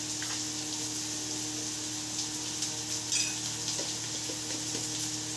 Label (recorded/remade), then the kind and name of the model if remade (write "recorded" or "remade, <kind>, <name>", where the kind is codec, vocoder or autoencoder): recorded